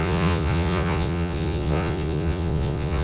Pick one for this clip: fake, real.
fake